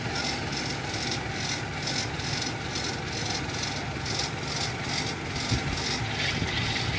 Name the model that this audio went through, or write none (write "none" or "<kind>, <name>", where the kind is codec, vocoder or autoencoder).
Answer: none